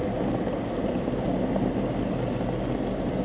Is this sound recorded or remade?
recorded